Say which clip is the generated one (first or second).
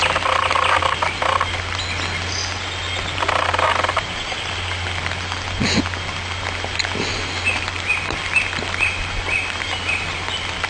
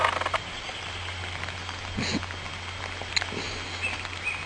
first